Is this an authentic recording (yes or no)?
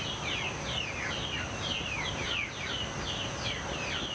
yes